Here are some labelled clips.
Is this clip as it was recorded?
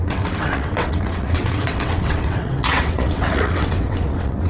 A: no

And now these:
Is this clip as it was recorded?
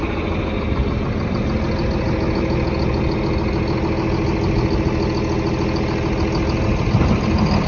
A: yes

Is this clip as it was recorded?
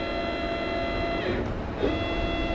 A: yes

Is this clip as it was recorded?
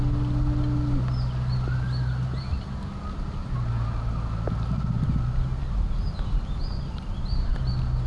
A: yes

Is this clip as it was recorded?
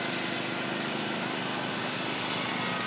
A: yes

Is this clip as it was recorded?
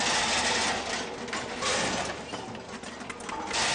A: yes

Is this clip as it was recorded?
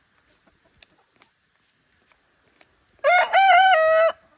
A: yes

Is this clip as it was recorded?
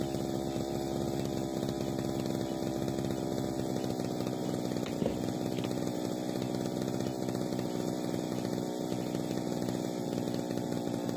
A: yes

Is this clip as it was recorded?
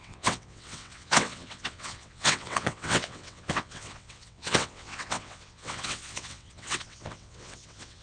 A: no